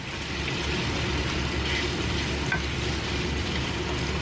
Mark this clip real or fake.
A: real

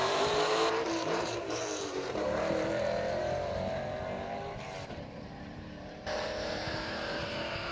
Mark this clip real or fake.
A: fake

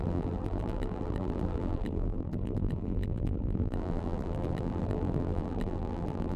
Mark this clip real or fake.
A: fake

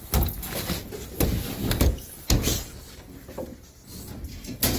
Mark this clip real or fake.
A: real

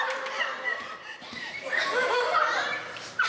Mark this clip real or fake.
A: fake